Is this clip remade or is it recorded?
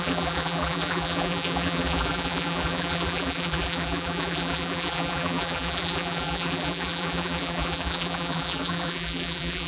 remade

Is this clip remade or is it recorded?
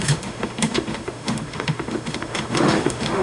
remade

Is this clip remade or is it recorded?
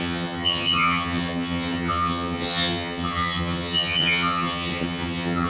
remade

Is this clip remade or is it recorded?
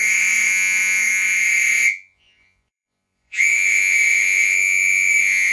remade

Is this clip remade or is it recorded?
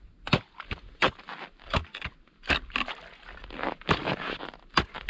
recorded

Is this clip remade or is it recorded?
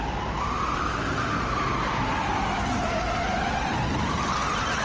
recorded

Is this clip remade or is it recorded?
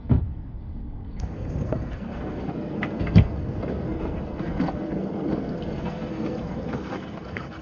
remade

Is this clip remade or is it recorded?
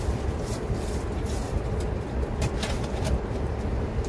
remade